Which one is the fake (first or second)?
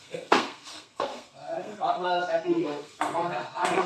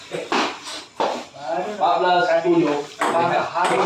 first